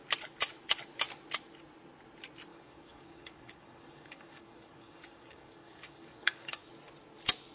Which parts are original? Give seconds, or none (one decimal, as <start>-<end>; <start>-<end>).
0.0-2.5; 6.7-7.5